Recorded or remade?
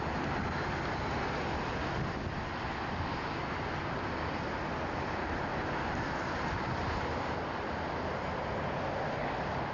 recorded